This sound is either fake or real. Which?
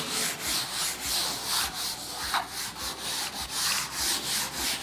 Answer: real